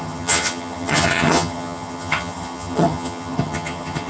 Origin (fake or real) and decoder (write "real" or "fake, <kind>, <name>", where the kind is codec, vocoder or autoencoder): fake, vocoder, HiFi-GAN